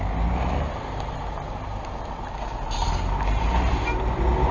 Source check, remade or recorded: recorded